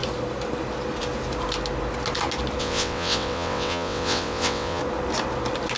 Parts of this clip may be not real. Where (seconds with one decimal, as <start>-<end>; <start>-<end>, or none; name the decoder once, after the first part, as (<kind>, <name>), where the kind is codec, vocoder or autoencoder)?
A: 2.6-4.8 (vocoder, WaveNeXt)